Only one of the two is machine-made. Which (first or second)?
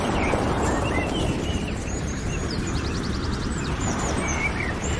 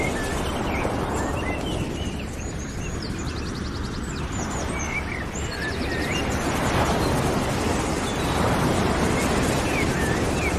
first